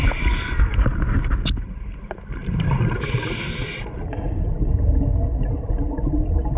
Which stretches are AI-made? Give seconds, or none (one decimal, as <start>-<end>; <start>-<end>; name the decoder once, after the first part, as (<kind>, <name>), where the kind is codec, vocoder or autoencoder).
none

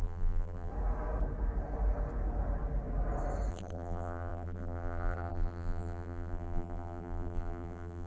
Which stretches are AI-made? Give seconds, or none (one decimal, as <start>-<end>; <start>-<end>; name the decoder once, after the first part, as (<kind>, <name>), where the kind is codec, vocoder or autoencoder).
0.0-0.7 (vocoder, BigVGAN v2); 3.5-8.1

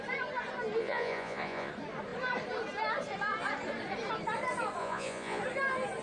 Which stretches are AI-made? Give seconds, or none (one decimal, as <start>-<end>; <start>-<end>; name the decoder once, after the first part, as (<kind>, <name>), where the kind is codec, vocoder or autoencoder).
0.8-1.7 (vocoder, Vocos); 4.8-5.4

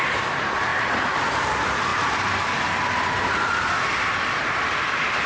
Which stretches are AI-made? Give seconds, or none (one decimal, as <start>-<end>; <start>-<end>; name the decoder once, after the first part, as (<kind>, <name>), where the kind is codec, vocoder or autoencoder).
none

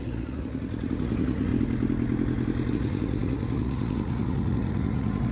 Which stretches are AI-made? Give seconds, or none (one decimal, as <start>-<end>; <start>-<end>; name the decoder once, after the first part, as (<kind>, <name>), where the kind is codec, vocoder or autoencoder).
0.0-1.5 (vocoder, Vocos); 2.7-5.3

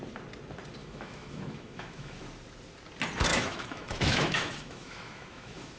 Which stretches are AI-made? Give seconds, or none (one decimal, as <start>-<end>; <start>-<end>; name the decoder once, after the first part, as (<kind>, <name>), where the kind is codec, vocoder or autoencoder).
0.8-2.2 (autoencoder, DAC-VAE); 3.3-5.8

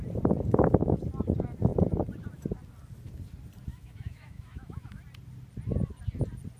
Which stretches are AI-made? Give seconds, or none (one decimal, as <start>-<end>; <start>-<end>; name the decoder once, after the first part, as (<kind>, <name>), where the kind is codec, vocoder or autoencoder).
3.7-5.0 (autoencoder, DAC-VAE)